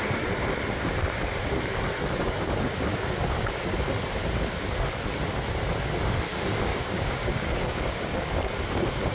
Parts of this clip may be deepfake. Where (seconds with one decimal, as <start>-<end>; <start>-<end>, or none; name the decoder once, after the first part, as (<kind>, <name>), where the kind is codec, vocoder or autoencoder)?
6.7-8.3 (codec, DAC)